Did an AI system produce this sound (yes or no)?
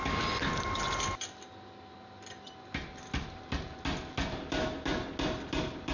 no